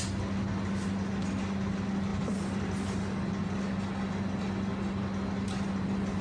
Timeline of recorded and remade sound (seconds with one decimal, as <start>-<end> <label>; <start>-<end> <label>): 0.0-6.2 recorded